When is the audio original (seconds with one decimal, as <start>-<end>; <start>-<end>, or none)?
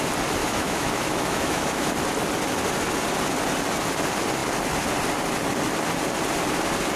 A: 0.0-0.4; 1.9-7.0